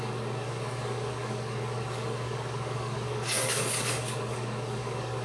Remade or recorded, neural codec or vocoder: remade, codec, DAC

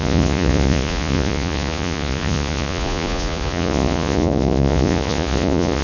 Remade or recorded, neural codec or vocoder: remade, vocoder, Vocos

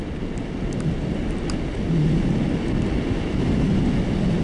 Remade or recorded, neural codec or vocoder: recorded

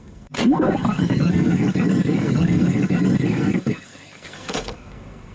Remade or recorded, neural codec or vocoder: remade, codec, SNAC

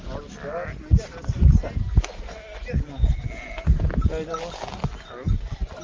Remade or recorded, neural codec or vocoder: recorded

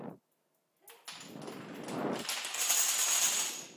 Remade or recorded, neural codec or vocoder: recorded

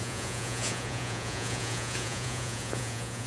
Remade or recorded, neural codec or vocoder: remade, vocoder, Vocos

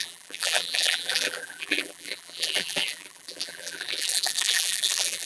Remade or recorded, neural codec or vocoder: remade, vocoder, BigVGAN v2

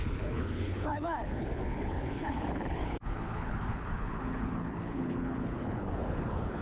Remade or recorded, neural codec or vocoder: remade, codec, HILCodec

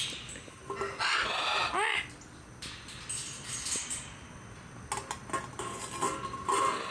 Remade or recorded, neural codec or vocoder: recorded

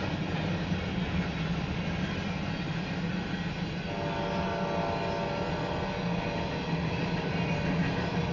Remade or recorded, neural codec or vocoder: recorded